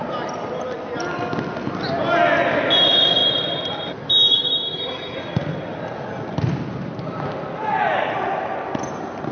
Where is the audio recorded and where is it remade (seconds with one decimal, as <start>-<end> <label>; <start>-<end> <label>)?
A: 0.0-9.3 recorded